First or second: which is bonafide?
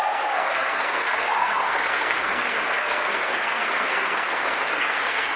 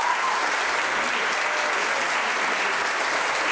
second